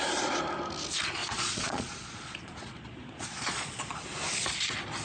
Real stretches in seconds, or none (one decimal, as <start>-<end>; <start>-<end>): 0.0-1.2; 4.0-5.0